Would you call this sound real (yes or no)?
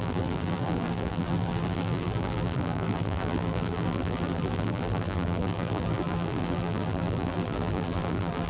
no